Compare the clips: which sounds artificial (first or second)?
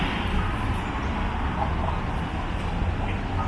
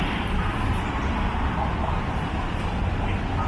second